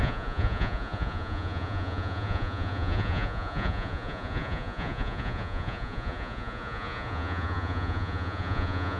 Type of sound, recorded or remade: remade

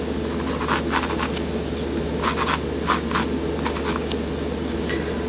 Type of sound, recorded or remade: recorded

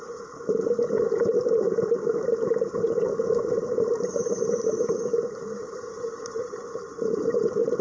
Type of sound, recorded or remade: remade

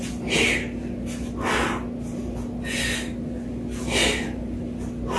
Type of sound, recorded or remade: recorded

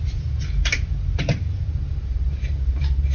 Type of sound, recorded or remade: remade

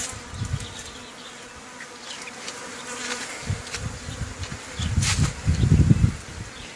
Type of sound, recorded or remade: recorded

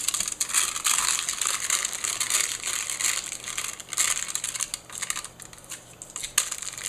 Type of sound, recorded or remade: recorded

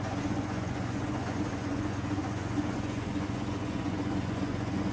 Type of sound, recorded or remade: remade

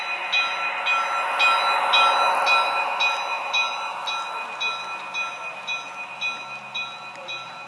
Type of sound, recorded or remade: recorded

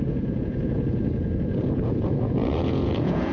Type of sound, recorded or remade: remade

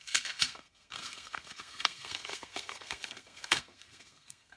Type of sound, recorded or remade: remade